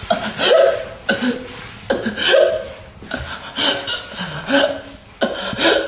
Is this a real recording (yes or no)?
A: yes